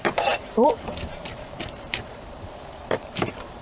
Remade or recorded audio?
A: remade